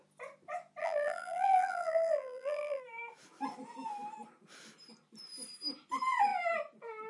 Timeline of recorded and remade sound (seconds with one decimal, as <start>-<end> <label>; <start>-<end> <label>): 0.0-0.8 recorded; 0.8-2.8 remade; 2.8-7.1 recorded